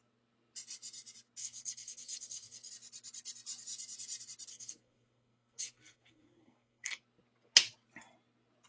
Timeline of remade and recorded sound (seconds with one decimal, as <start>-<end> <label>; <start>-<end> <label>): 0.0-1.4 recorded; 1.4-2.7 remade; 2.7-4.5 recorded; 4.5-7.0 remade; 7.0-8.7 recorded